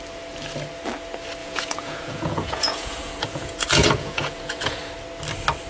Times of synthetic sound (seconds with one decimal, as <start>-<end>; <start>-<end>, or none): 1.4-4.8